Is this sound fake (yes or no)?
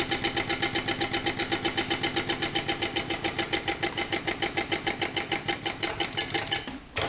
no